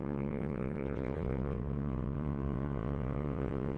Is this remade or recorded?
remade